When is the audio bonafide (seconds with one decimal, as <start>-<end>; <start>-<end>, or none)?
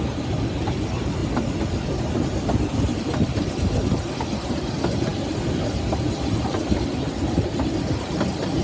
0.0-8.6